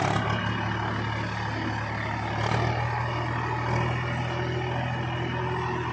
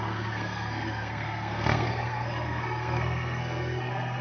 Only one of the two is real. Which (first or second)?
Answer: first